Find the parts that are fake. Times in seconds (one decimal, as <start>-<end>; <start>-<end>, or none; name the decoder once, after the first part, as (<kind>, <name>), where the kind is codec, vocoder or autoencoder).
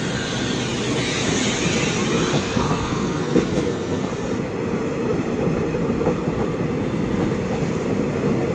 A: 2.3-4.1 (codec, SNAC)